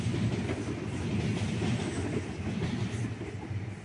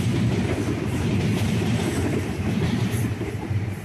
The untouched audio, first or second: first